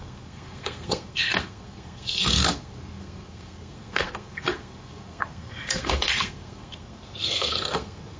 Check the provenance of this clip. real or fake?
fake